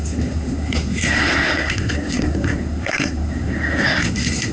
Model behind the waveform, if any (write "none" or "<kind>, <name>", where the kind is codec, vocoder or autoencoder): codec, SNAC